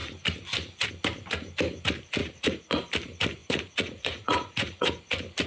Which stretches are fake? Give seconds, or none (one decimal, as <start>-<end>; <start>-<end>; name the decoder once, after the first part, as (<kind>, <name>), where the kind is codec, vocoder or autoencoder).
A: 2.2-2.8 (vocoder, Vocos); 3.4-4.9